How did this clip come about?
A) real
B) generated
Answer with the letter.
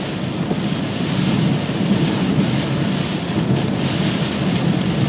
A